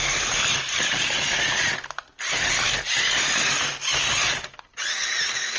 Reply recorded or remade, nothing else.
recorded